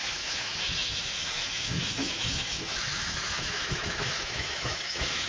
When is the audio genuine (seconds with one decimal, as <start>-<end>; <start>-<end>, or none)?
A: none